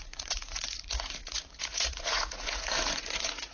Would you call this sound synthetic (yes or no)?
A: yes